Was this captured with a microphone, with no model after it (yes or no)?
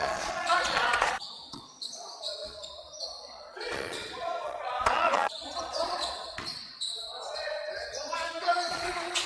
no